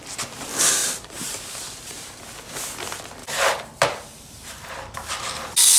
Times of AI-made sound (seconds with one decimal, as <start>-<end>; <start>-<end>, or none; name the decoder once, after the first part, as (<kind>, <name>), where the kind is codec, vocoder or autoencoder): 0.8-2.2 (vocoder, BigVGAN v2); 3.2-4.7